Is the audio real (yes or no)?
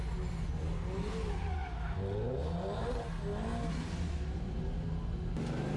yes